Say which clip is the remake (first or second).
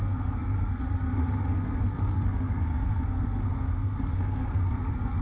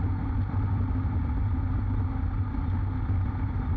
first